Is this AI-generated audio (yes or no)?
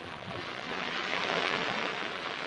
yes